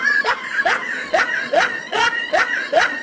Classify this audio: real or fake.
fake